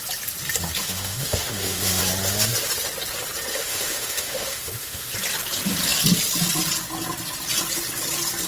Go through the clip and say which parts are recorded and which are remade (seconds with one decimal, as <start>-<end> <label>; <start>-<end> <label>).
0.0-0.8 recorded; 0.8-2.0 remade; 2.0-3.5 recorded; 3.5-5.1 remade; 5.1-8.5 recorded